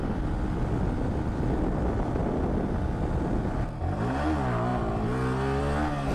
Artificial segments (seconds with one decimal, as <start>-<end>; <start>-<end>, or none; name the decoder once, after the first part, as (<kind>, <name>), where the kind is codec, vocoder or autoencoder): none